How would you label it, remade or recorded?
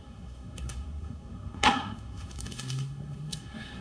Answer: remade